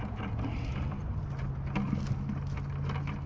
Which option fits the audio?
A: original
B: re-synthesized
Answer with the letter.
A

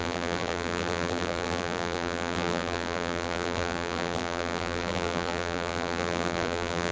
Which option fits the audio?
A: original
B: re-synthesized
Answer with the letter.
B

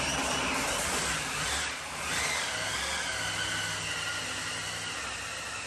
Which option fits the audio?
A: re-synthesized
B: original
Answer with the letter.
B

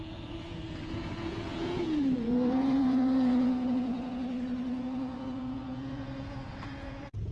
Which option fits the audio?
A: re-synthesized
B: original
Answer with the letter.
A